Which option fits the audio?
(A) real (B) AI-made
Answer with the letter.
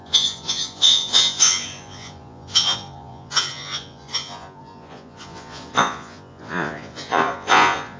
B